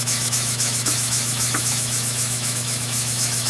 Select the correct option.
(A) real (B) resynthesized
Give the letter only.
B